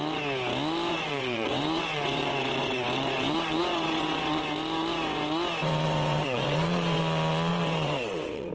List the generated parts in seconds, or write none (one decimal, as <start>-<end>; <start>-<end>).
0.9-4.4; 5.6-7.0; 7.5-8.5